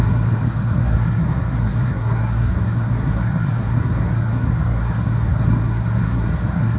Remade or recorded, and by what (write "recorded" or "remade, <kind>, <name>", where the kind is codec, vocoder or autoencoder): remade, codec, SNAC